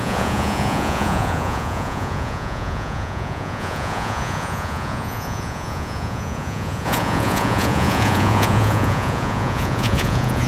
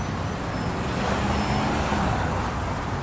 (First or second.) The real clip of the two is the second